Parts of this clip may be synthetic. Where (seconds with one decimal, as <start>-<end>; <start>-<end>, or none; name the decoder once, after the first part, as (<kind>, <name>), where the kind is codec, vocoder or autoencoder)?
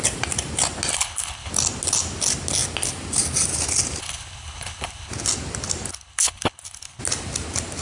0.9-1.5 (codec, HILCodec); 4.0-5.1; 5.9-7.0